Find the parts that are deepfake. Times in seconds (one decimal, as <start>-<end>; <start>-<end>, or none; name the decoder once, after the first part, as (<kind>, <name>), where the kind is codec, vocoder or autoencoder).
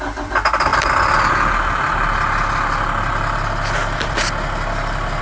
0.7-1.5 (vocoder, BigVGAN v2); 3.1-5.2